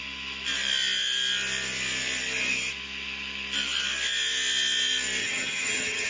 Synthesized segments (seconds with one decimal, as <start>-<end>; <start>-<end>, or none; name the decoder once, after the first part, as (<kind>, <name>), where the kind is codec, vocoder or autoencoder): 5.2-6.1 (vocoder, HiFi-GAN)